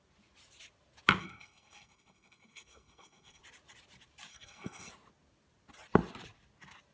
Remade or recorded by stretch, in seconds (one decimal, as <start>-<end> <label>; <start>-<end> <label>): 0.0-1.2 recorded; 1.2-3.4 remade; 3.4-4.3 recorded; 4.3-4.9 remade; 4.9-6.9 recorded